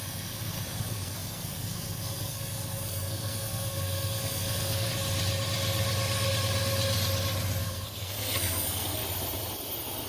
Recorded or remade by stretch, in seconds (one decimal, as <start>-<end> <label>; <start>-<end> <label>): 0.0-4.9 remade; 4.9-7.6 recorded; 7.6-9.0 remade; 9.0-10.1 recorded